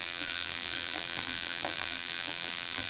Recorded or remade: remade